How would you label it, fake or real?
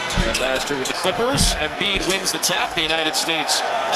fake